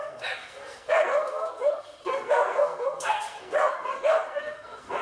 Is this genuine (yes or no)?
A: no